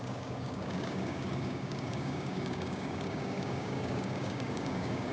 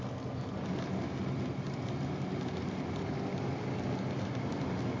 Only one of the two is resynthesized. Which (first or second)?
first